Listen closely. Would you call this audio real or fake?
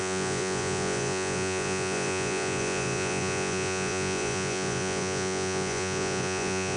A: fake